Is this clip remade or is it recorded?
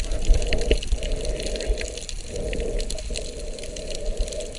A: recorded